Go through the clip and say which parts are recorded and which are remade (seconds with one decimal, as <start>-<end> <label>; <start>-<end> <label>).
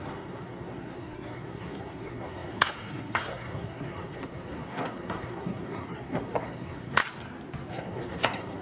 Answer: 0.0-7.0 remade; 7.0-7.7 recorded; 7.7-8.6 remade